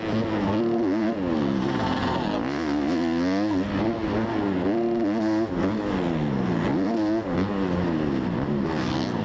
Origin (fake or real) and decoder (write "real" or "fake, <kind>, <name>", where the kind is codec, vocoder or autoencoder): real